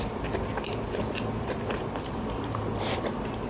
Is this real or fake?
fake